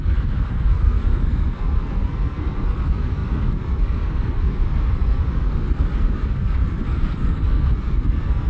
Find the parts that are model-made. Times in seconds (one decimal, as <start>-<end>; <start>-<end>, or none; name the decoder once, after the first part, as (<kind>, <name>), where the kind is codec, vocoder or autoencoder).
0.0-8.5 (codec, SNAC)